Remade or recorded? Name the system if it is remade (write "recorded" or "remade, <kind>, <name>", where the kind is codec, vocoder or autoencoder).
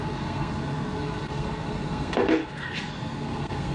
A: remade, codec, SNAC